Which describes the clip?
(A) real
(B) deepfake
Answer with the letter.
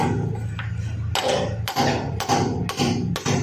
A